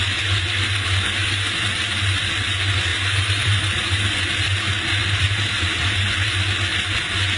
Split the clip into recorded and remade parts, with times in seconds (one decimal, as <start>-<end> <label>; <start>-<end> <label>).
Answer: 0.0-2.9 recorded; 2.9-4.2 remade; 4.2-5.0 recorded; 5.0-5.8 remade; 5.8-7.4 recorded